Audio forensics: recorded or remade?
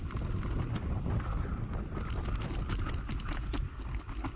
recorded